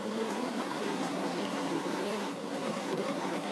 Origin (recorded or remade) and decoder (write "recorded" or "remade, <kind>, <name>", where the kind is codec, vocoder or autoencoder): remade, codec, SNAC